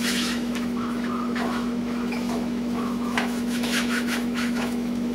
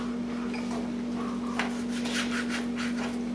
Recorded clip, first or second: second